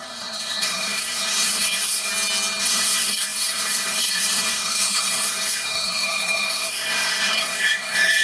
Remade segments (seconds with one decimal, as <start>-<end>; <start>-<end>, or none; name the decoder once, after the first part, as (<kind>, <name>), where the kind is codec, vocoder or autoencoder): 0.0-2.1 (codec, SNAC); 2.6-8.2